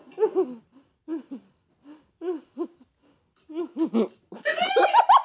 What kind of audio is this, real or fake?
real